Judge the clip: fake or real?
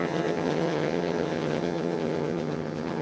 fake